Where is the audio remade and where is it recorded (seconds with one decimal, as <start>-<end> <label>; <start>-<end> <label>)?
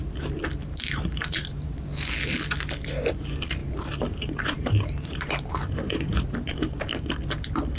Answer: 0.0-0.6 recorded; 0.6-1.8 remade; 1.8-3.6 recorded; 3.6-7.1 remade; 7.1-7.8 recorded